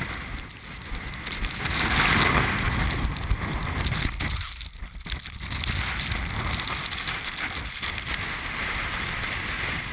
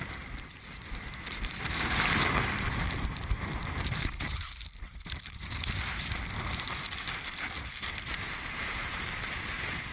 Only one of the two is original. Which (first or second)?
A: first